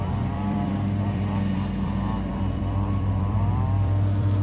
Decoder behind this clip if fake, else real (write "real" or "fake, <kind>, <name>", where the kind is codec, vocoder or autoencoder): fake, vocoder, BigVGAN v2